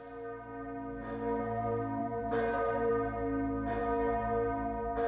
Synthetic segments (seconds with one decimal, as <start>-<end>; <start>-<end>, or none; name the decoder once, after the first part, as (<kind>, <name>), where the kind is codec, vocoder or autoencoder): 2.0-2.9 (vocoder, BigVGAN v2)